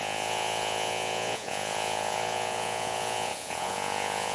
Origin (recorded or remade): remade